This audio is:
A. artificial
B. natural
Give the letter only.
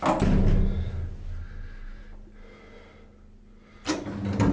B